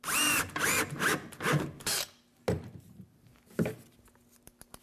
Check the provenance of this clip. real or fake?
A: real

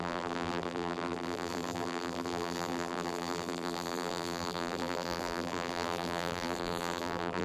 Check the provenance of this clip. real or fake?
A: fake